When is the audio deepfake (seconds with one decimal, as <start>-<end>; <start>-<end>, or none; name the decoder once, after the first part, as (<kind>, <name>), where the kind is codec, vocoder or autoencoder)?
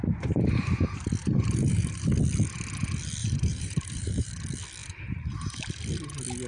1.2-2.1 (vocoder, BigVGAN v2); 3.2-4.3; 4.8-5.7